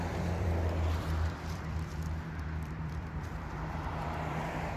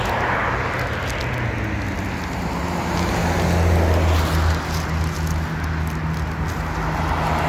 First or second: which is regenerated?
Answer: first